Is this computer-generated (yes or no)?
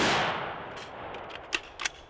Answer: no